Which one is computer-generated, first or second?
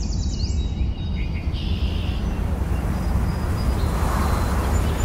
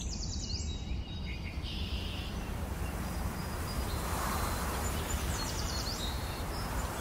second